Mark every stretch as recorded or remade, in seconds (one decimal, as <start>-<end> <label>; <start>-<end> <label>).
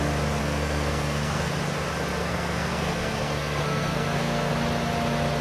0.0-0.4 recorded; 0.4-1.5 remade; 1.5-2.1 recorded; 2.1-4.5 remade; 4.5-5.4 recorded